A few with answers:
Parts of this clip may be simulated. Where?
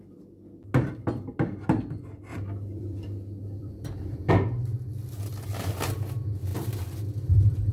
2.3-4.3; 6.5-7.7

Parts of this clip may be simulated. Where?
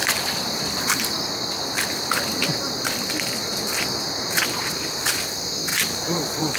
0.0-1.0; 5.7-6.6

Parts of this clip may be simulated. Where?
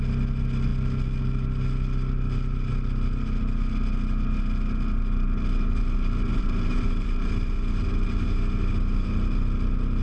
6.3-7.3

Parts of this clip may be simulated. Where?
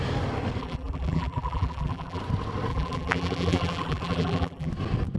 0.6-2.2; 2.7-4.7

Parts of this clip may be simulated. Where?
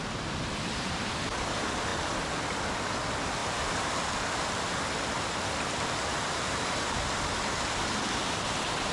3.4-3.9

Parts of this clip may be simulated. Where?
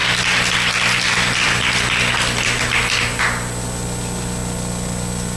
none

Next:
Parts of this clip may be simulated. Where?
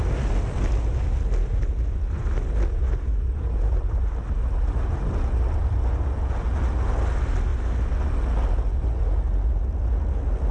3.1-3.7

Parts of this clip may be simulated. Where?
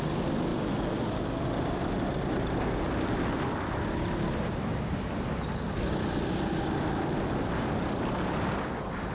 none